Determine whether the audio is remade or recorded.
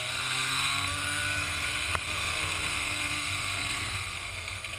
remade